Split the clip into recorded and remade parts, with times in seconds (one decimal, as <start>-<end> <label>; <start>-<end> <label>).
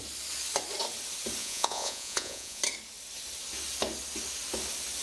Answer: 0.0-1.4 recorded; 1.4-2.6 remade; 2.6-5.0 recorded